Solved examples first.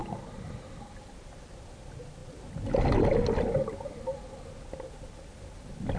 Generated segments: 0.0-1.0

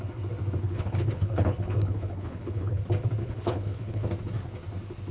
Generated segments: 0.6-2.8; 3.2-4.1